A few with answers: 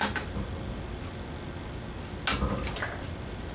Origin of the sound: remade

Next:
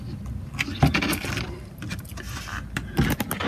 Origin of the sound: recorded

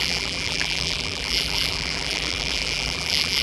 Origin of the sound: remade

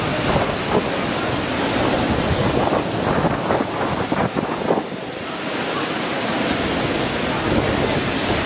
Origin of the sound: recorded